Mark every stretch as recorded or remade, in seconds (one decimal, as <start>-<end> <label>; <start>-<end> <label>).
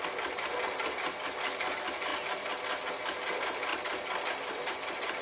0.0-5.2 recorded